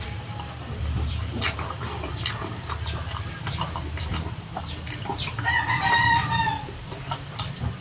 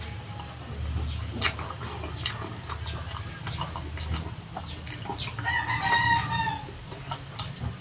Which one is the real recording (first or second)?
second